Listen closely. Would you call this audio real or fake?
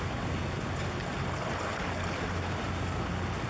real